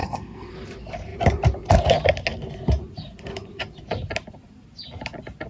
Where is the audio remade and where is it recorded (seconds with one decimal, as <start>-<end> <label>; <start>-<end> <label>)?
0.0-0.5 remade; 0.5-5.5 recorded

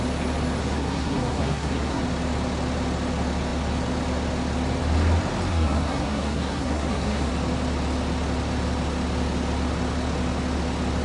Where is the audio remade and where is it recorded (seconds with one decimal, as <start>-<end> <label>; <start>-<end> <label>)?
0.0-0.6 recorded; 0.6-2.0 remade; 2.0-5.5 recorded; 5.5-7.3 remade; 7.3-11.0 recorded

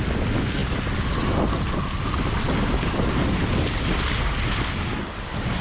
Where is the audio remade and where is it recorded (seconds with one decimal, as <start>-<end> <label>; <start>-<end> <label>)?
0.0-5.6 recorded

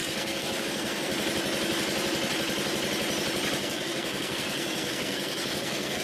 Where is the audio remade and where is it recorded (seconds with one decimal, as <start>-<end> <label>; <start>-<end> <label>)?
0.0-1.1 remade; 1.1-3.6 recorded; 3.6-6.0 remade

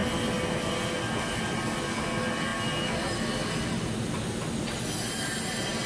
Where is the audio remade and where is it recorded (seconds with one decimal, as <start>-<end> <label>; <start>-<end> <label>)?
0.0-5.9 recorded

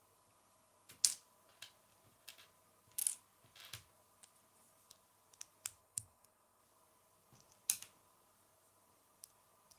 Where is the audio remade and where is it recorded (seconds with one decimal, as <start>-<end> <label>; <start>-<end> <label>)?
0.0-5.8 recorded; 5.8-6.6 remade; 6.6-9.8 recorded

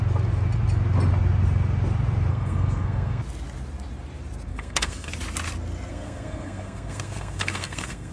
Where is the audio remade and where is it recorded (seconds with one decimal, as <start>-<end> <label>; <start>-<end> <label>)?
0.0-2.3 recorded; 2.3-3.2 remade; 3.2-4.5 recorded; 4.5-5.1 remade; 5.1-5.9 recorded; 5.9-8.1 remade

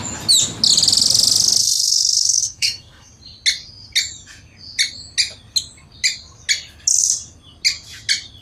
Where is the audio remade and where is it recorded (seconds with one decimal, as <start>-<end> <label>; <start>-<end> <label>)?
0.0-1.6 recorded; 1.6-3.1 remade; 3.1-8.4 recorded